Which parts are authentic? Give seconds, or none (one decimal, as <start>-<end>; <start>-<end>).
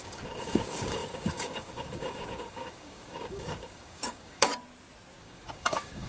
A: 4.5-5.2